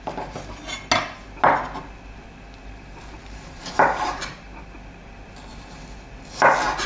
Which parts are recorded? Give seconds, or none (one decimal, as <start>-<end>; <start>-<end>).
0.0-2.6; 4.6-6.9